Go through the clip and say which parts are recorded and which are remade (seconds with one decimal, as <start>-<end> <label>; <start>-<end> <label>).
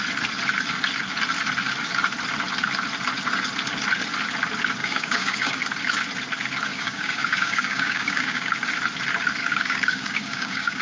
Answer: 0.0-4.8 recorded; 4.8-5.6 remade; 5.6-6.7 recorded; 6.7-8.5 remade; 8.5-9.4 recorded; 9.4-10.8 remade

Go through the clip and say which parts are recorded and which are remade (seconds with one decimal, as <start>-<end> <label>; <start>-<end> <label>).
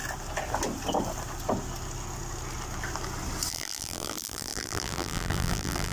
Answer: 0.0-3.5 recorded; 3.5-5.9 remade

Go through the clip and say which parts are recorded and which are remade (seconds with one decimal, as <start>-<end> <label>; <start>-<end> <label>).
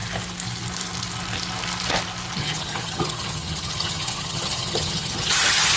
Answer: 0.0-2.4 recorded; 2.4-5.8 remade